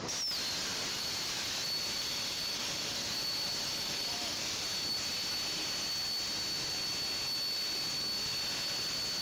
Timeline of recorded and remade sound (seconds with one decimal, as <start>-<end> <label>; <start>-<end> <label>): 0.0-0.6 recorded; 0.6-5.1 remade; 5.1-9.2 recorded

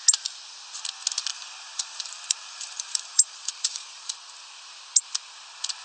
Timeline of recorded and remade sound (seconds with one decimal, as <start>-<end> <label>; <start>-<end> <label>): 0.0-1.3 recorded; 1.3-4.1 remade; 4.1-5.8 recorded

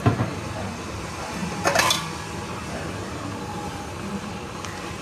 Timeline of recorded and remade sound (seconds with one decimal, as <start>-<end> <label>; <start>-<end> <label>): 0.0-1.4 remade; 1.4-3.4 recorded; 3.4-5.0 remade